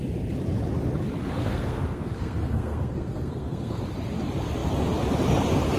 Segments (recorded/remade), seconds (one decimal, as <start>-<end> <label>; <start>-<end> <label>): 0.0-1.4 recorded; 1.4-3.8 remade; 3.8-5.8 recorded